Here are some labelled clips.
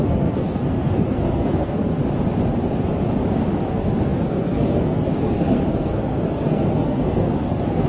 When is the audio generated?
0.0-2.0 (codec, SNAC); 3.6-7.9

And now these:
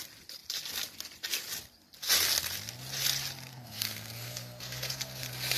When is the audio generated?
3.5-5.6 (codec, SNAC)

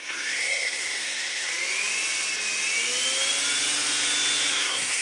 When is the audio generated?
0.0-1.5 (codec, SNAC); 4.5-5.0

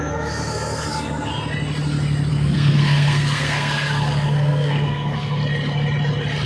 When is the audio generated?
0.0-1.3 (codec, SNAC); 2.3-5.4

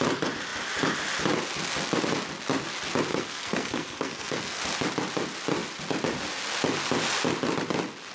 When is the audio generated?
3.1-4.6 (codec, SNAC)

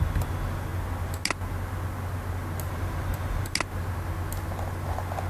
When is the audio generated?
none

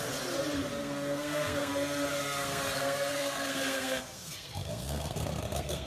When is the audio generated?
0.8-1.7 (codec, SNAC); 2.1-5.9